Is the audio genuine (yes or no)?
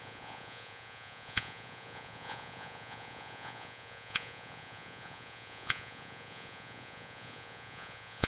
no